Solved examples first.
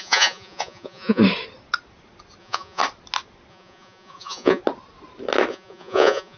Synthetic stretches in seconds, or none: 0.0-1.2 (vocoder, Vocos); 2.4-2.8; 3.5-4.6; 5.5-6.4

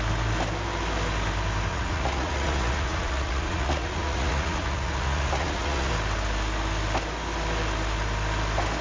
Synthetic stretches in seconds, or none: 1.7-5.9 (vocoder, Vocos)

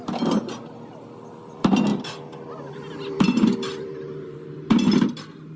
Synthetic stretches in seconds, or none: none

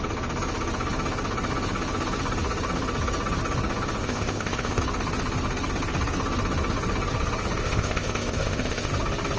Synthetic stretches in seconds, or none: 4.0-4.8 (codec, ZipCodec); 7.6-8.9

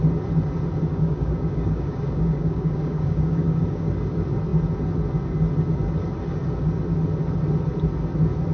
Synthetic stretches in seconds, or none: 0.9-3.9 (codec, DAC)

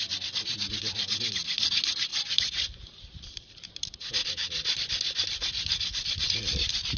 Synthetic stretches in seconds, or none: 2.1-3.7 (vocoder, BigVGAN v2)

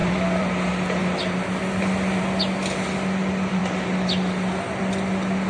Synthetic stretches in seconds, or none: 0.0-0.5 (vocoder, BigVGAN v2)